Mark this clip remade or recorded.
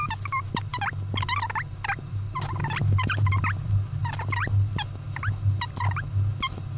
recorded